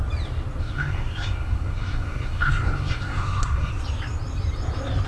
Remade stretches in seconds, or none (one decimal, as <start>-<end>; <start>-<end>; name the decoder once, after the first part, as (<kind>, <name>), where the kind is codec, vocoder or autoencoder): 0.6-3.7 (codec, SNAC)

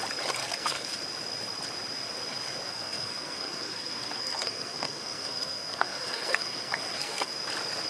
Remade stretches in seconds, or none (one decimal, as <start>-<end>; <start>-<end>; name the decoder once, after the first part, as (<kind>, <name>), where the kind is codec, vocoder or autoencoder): 0.4-1.0 (codec, SNAC); 2.7-7.3

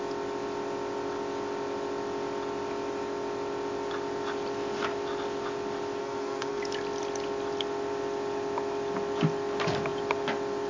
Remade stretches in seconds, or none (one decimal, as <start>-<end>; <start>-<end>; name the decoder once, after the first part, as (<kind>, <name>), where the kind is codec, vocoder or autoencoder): 6.0-6.6 (codec, SNAC)

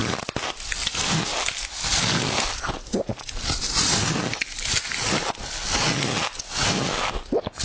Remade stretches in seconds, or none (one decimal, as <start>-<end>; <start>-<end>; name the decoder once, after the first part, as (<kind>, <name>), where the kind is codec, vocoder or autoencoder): 1.7-2.4 (codec, SNAC)

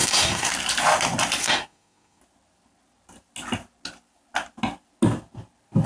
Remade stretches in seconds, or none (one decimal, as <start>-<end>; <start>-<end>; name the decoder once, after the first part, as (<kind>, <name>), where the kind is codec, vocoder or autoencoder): 0.0-0.5 (codec, SNAC); 1.4-2.2

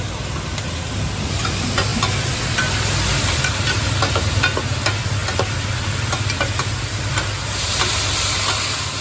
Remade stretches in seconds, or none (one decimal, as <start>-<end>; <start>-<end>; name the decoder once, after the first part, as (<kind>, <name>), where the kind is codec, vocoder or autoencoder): none

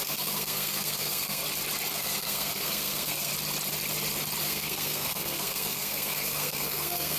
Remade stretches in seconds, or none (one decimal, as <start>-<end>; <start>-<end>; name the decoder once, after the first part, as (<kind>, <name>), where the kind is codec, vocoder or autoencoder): 0.0-1.4 (codec, SNAC); 1.9-3.3; 4.4-7.2